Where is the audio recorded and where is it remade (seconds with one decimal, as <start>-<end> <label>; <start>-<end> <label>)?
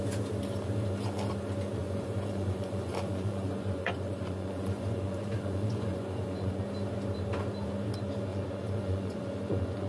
0.0-1.8 recorded; 1.8-6.6 remade; 6.6-8.3 recorded; 8.3-9.9 remade